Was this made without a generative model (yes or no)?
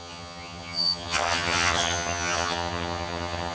no